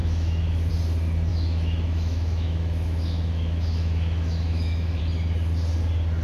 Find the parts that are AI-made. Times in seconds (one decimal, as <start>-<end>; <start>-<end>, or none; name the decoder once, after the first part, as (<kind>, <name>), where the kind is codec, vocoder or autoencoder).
0.0-0.7 (autoencoder, DAC-VAE); 1.3-5.0